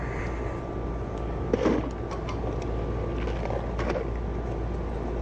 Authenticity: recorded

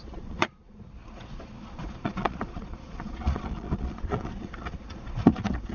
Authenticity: remade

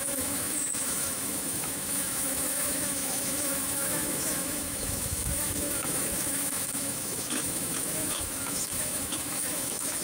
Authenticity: remade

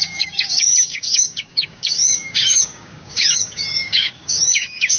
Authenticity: remade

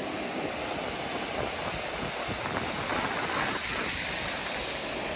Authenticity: recorded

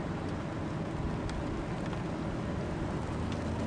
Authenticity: recorded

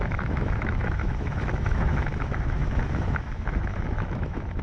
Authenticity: remade